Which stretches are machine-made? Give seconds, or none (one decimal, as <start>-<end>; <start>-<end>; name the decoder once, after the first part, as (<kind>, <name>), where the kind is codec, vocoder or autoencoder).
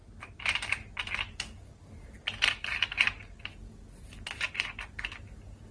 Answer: none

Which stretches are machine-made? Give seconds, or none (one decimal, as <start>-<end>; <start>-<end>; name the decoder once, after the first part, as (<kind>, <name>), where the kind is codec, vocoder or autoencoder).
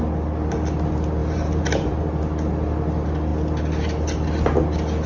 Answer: 1.2-2.0 (vocoder, BigVGAN v2)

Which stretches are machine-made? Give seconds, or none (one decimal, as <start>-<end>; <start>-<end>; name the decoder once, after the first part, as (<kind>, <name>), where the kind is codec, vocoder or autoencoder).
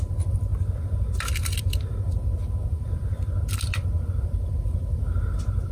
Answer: none